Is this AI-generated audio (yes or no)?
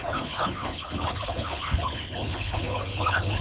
yes